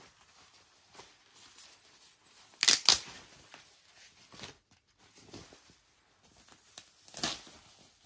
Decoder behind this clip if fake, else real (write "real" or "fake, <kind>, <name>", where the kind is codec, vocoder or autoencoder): real